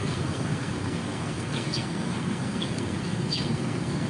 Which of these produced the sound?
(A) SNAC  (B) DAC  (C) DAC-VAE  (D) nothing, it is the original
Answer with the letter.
A